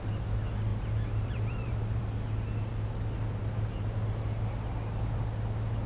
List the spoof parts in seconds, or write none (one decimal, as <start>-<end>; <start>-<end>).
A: 0.7-2.0